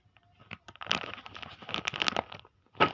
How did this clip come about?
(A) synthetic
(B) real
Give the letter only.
B